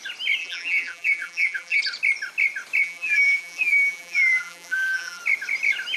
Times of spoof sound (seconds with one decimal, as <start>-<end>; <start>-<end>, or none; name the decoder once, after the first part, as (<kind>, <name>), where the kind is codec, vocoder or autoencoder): 0.4-1.8 (vocoder, BigVGAN v2); 2.8-5.2